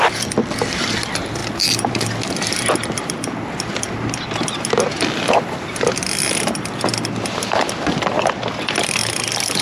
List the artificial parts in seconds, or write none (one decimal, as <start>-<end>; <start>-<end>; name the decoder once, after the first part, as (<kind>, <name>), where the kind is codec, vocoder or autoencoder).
none